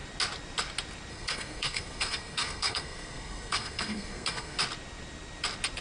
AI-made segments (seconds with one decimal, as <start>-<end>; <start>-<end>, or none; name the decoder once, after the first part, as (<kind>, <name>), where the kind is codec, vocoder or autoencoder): 1.1-4.6 (codec, SNAC)